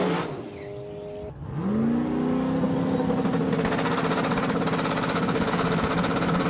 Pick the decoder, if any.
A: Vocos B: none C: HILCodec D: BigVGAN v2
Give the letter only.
B